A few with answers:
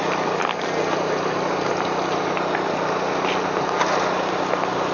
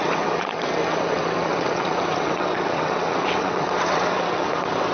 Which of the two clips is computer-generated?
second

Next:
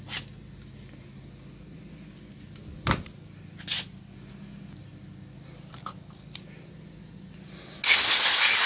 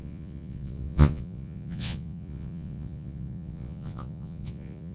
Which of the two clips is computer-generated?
second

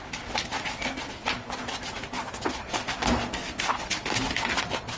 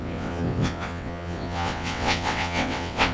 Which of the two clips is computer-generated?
second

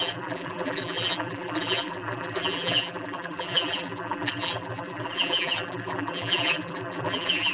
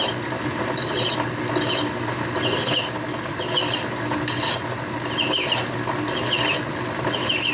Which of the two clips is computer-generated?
first